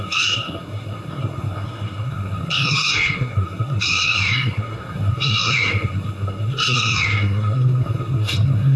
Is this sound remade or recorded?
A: remade